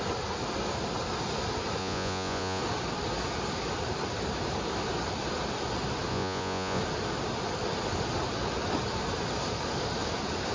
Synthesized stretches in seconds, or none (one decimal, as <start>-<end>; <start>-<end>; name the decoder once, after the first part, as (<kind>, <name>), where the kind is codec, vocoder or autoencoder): 1.8-2.6 (vocoder, Vocos); 6.1-6.8